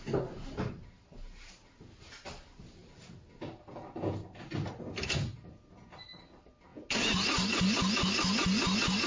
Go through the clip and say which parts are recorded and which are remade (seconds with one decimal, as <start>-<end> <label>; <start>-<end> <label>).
0.0-9.1 recorded